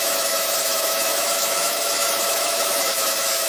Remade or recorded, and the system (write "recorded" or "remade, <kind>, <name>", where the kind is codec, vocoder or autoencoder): remade, autoencoder, DAC-VAE